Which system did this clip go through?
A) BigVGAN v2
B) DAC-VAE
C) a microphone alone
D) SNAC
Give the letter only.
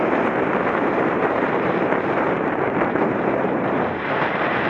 A